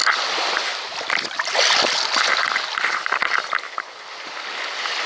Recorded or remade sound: recorded